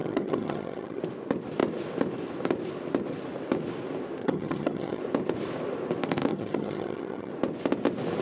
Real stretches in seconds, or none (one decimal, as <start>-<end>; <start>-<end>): 1.0-4.2; 5.0-6.3; 7.3-8.2